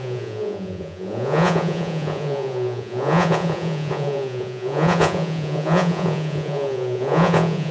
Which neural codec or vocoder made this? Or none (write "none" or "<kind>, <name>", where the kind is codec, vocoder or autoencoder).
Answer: vocoder, Vocos